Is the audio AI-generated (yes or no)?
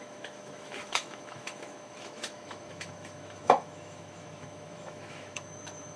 yes